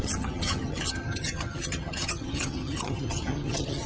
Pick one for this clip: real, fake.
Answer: fake